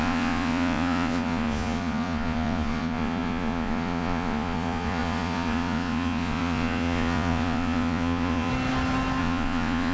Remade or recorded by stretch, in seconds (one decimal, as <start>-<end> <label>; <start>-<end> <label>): 0.0-8.5 remade; 8.5-9.2 recorded; 9.2-9.9 remade